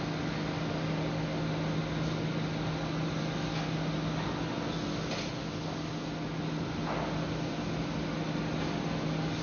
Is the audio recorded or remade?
recorded